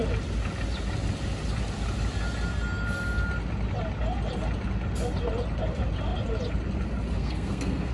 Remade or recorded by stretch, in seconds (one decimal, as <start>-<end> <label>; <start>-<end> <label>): 0.0-7.2 recorded; 7.2-7.9 remade